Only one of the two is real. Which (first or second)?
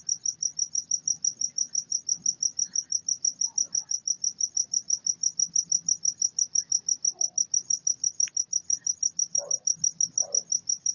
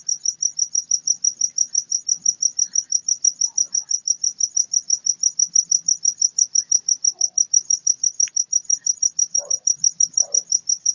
first